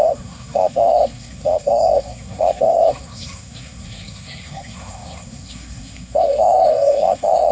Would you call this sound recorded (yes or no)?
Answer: no